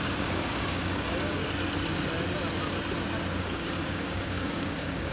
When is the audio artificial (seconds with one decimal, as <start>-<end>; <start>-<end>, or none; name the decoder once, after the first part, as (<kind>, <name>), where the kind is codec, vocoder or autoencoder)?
0.0-1.4 (codec, DAC); 3.4-5.1

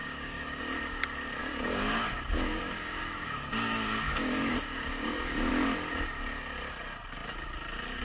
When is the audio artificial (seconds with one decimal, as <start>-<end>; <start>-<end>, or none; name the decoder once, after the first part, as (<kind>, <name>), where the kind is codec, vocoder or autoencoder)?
0.0-0.6 (codec, DAC); 1.4-5.5